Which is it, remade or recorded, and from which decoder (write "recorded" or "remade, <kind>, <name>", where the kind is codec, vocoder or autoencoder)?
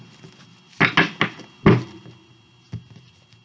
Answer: recorded